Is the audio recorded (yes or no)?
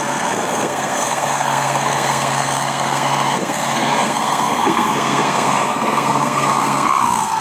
no